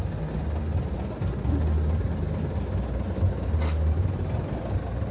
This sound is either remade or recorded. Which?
recorded